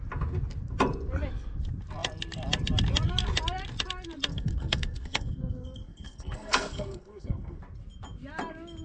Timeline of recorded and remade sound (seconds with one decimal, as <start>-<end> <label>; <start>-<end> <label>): 0.0-4.3 recorded; 4.3-7.6 remade; 7.6-8.8 recorded